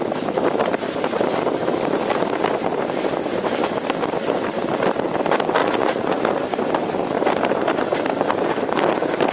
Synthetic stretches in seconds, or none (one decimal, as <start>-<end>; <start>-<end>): 5.6-6.2